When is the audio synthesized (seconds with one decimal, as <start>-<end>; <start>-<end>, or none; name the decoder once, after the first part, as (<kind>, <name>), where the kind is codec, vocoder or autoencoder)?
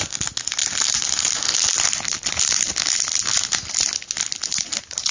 none